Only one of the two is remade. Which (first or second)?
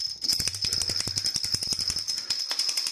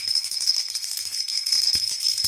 second